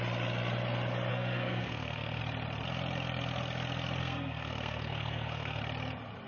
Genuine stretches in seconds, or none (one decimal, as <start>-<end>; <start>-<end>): 0.0-1.1; 2.2-4.0; 5.6-6.3